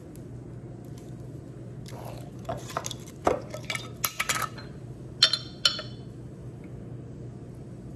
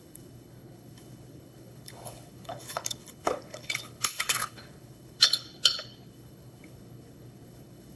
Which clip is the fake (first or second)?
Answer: second